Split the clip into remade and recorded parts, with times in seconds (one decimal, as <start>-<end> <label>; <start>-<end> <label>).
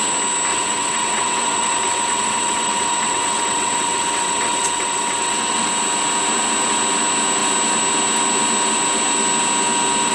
0.0-0.5 recorded; 0.5-5.7 remade; 5.7-10.1 recorded